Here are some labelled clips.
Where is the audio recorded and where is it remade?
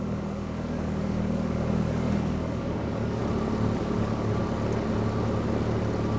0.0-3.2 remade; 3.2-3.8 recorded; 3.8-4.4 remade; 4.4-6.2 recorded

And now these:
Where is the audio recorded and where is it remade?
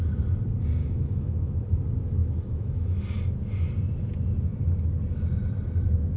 0.0-0.8 recorded; 0.8-1.8 remade; 1.8-2.2 recorded; 2.2-3.0 remade; 3.0-6.2 recorded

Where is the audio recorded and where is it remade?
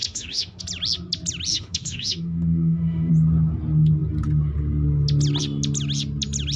0.0-0.6 remade; 0.6-1.5 recorded; 1.5-3.1 remade; 3.1-6.6 recorded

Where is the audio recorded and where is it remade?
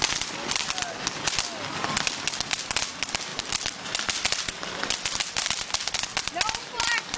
0.0-7.2 recorded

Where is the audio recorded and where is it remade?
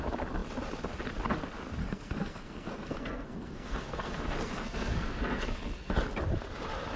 0.0-1.8 recorded; 1.8-6.0 remade; 6.0-7.0 recorded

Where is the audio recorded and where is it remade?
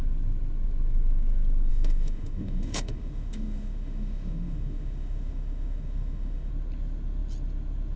0.0-1.7 recorded; 1.7-6.5 remade; 6.5-8.0 recorded